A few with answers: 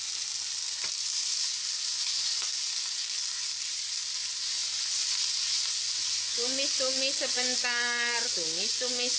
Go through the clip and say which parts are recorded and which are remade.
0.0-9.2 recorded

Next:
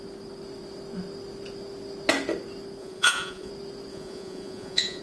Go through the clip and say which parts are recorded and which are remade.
0.0-2.8 recorded; 2.8-3.5 remade; 3.5-3.9 recorded; 3.9-5.0 remade

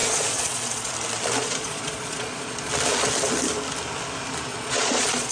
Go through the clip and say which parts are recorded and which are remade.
0.0-0.9 remade; 0.9-1.4 recorded; 1.4-2.7 remade; 2.7-4.5 recorded; 4.5-5.3 remade